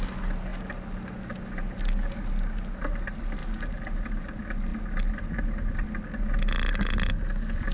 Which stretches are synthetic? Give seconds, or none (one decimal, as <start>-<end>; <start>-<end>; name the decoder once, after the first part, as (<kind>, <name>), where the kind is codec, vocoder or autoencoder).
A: none